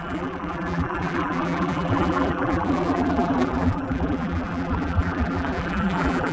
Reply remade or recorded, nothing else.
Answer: remade